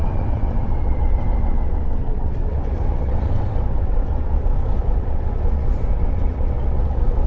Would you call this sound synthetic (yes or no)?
yes